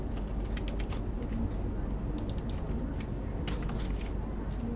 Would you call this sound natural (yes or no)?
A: yes